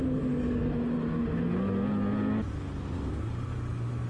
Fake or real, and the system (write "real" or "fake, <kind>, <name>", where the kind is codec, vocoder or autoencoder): real